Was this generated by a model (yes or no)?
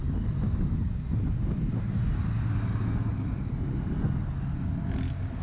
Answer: no